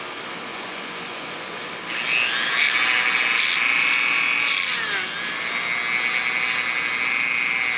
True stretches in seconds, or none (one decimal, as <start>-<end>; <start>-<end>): 0.0-0.5; 1.7-7.8